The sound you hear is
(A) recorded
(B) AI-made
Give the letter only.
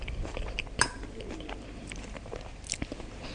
A